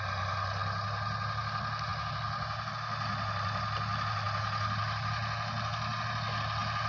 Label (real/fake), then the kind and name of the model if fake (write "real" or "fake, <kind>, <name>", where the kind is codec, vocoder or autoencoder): real